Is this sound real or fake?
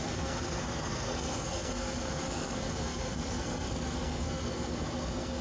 fake